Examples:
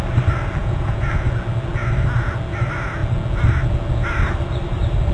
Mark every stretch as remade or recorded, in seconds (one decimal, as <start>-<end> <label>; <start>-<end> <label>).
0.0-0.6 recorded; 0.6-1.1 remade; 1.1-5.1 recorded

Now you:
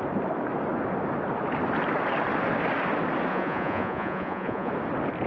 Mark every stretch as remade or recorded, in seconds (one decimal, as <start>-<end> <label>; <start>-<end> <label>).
0.0-3.3 recorded; 3.3-4.7 remade; 4.7-5.3 recorded

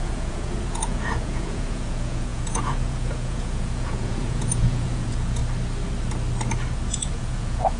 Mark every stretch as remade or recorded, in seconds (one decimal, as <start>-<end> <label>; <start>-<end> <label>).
0.0-5.4 remade; 5.4-6.9 recorded; 6.9-7.8 remade

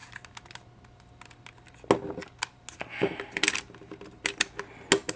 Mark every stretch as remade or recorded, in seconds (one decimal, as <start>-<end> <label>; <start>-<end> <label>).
0.0-5.2 recorded